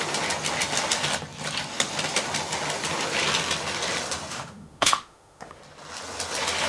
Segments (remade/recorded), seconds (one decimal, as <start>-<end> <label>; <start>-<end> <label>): 0.0-4.3 recorded; 4.3-5.6 remade; 5.6-6.7 recorded